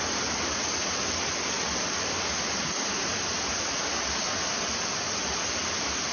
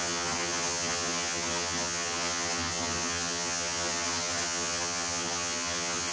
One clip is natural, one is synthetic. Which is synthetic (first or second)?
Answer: second